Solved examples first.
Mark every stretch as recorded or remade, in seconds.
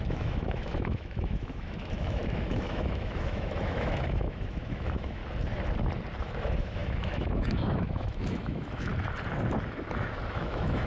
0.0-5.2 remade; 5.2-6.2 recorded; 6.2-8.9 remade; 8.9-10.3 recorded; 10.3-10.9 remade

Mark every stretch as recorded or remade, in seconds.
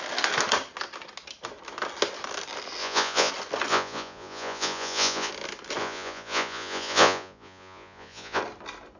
0.0-2.8 recorded; 2.8-3.3 remade; 3.3-3.7 recorded; 3.7-5.3 remade; 5.3-5.8 recorded; 5.8-8.4 remade; 8.4-9.0 recorded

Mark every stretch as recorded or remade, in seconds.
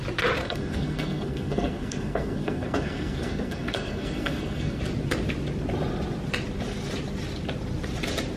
0.0-0.4 recorded; 0.4-4.8 remade; 4.8-8.4 recorded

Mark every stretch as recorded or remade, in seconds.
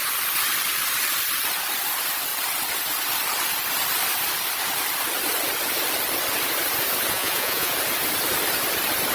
0.0-7.1 recorded; 7.1-7.7 remade; 7.7-9.1 recorded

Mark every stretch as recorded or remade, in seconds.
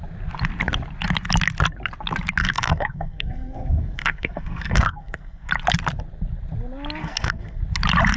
0.0-2.4 recorded; 2.4-5.5 remade; 5.5-7.0 recorded; 7.0-7.6 remade; 7.6-8.2 recorded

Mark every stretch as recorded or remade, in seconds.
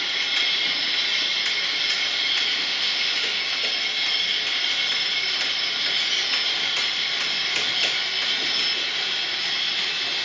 0.0-2.6 recorded; 2.6-3.4 remade; 3.4-10.2 recorded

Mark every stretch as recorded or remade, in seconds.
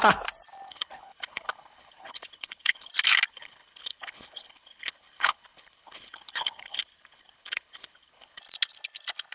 0.0-0.7 recorded; 0.7-2.9 remade; 2.9-3.3 recorded; 3.3-8.4 remade; 8.4-9.3 recorded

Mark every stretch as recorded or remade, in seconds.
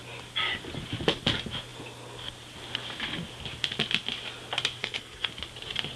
0.0-4.8 recorded; 4.8-5.3 remade; 5.3-6.0 recorded